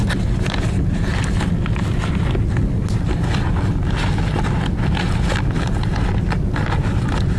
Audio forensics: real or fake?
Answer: real